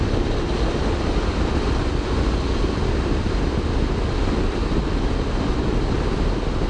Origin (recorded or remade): recorded